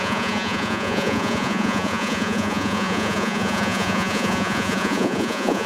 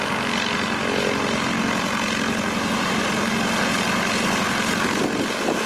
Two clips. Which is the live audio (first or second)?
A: second